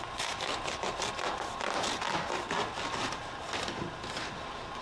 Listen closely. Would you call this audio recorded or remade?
recorded